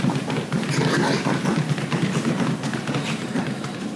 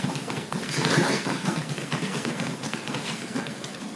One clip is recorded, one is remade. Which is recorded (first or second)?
first